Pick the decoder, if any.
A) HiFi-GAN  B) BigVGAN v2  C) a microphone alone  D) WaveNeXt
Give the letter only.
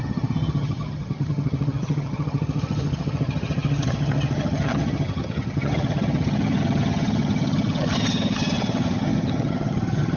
A